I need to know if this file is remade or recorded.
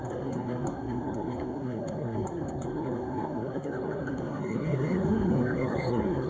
remade